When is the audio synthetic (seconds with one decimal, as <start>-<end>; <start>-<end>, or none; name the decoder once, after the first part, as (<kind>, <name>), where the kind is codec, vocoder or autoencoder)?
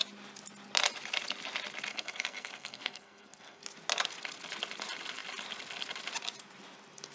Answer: 1.9-3.6 (codec, SNAC)